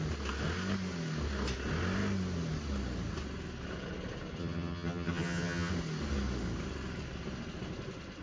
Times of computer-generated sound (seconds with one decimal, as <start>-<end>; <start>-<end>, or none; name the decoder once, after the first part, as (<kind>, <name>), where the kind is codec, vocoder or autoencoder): 4.4-5.7 (vocoder, HiFi-GAN)